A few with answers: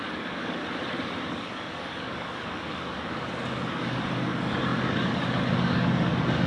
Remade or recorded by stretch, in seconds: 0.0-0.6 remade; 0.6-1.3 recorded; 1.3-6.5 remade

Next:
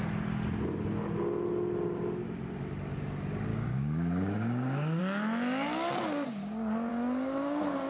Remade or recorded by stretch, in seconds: 0.0-3.5 recorded; 3.5-5.0 remade; 5.0-6.9 recorded; 6.9-7.9 remade

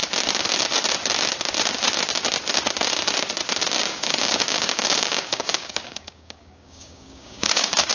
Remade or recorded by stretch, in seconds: 0.0-3.9 recorded; 3.9-7.9 remade

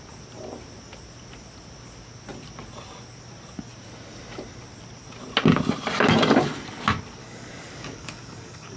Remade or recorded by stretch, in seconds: 0.0-7.2 recorded; 7.2-8.8 remade